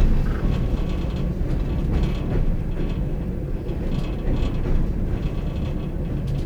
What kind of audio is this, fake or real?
real